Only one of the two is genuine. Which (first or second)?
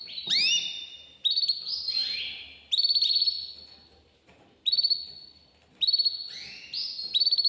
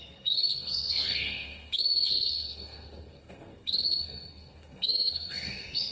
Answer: first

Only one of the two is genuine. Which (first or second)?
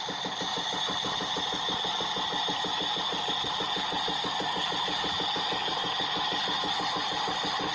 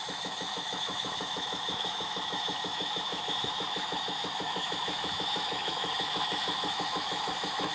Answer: first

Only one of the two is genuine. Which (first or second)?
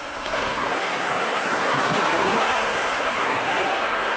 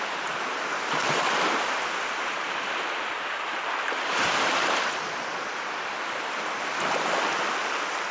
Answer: second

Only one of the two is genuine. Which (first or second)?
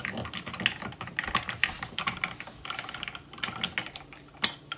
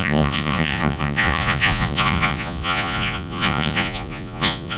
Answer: first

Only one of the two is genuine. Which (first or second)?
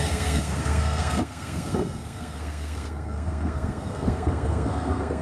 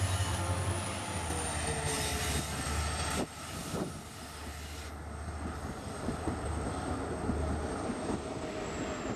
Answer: second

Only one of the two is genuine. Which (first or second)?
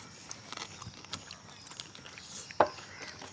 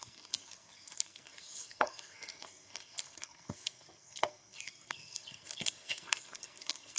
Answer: first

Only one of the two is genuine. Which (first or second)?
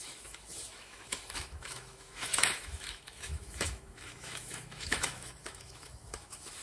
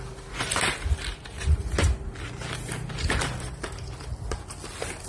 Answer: second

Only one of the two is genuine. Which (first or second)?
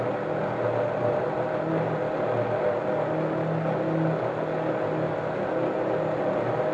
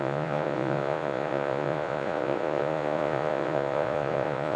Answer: first